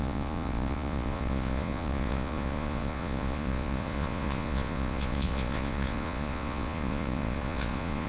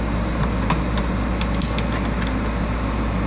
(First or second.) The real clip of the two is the second